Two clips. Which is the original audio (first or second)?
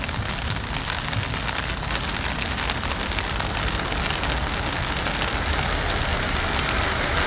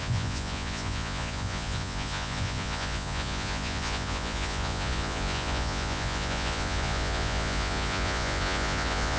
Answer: first